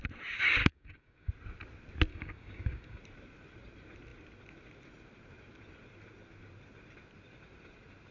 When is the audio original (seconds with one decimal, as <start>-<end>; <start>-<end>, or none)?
0.0-0.6; 1.3-2.1; 3.0-8.1